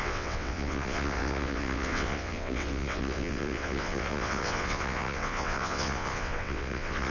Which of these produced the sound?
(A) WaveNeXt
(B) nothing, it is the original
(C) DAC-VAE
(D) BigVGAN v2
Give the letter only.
A